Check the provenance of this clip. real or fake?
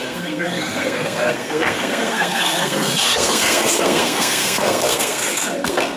fake